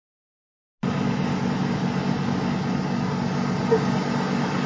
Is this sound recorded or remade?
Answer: recorded